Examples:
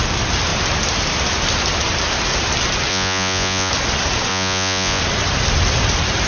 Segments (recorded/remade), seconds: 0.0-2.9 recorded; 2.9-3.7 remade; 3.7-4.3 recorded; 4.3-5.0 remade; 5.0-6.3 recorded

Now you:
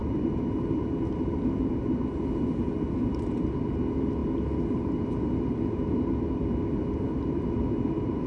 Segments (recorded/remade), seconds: 0.0-8.3 recorded

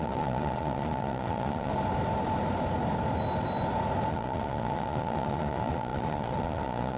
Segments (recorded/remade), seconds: 0.0-1.7 remade; 1.7-4.1 recorded; 4.1-7.0 remade

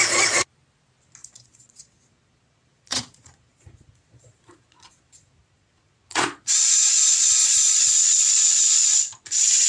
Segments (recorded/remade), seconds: 0.0-0.5 remade; 0.5-1.2 recorded; 1.2-6.5 remade; 6.5-7.4 recorded; 7.4-8.4 remade; 8.4-9.7 recorded